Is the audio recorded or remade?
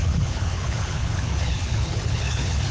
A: remade